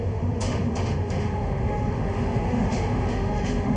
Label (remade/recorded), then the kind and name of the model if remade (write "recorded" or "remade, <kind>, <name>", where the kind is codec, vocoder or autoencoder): remade, autoencoder, DAC-VAE